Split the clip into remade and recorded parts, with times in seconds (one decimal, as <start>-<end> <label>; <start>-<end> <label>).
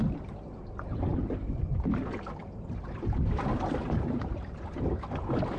0.0-5.6 recorded